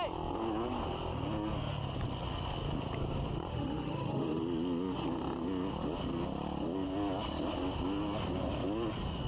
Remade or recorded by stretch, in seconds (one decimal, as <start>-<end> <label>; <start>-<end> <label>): 0.0-3.5 recorded; 3.5-4.4 remade; 4.4-9.3 recorded